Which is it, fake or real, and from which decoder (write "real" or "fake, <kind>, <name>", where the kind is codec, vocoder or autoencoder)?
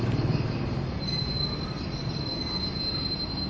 real